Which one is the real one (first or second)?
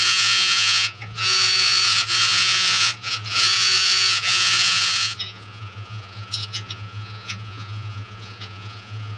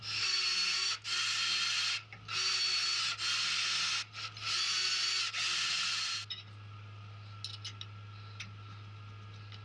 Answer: second